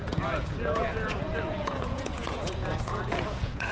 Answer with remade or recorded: remade